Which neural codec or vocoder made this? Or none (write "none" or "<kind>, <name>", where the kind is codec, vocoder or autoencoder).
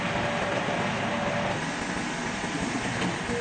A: none